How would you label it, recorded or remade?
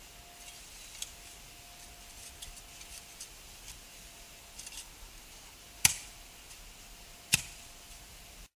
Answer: recorded